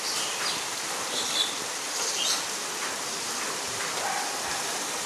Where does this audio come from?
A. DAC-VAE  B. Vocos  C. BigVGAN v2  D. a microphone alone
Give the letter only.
C